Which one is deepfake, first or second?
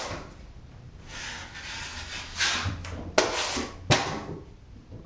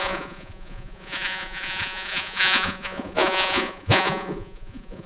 second